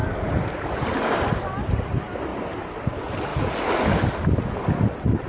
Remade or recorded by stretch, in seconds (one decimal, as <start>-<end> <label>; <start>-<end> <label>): 0.0-1.9 remade; 1.9-2.3 recorded; 2.3-2.9 remade; 2.9-5.3 recorded

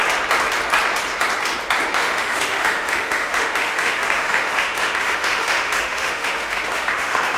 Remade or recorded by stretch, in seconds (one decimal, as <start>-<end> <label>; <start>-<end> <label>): 0.0-1.9 recorded; 1.9-7.4 remade

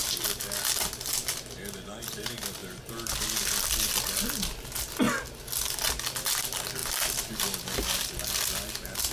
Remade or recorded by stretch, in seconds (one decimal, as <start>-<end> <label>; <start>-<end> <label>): 0.0-9.1 recorded

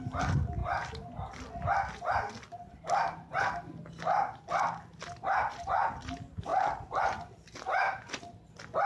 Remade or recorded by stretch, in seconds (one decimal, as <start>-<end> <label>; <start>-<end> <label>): 0.0-2.7 recorded; 2.7-3.3 remade; 3.3-6.5 recorded; 6.5-7.0 remade; 7.0-8.9 recorded

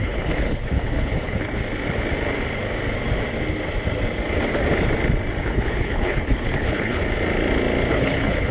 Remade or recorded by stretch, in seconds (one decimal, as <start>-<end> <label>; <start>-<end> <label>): 0.0-1.6 remade; 1.6-5.4 recorded; 5.4-7.0 remade; 7.0-7.9 recorded; 7.9-8.5 remade

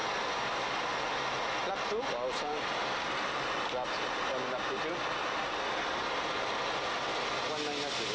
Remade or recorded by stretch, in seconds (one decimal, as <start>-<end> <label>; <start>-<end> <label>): 0.0-8.1 recorded